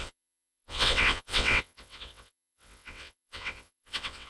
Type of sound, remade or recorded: remade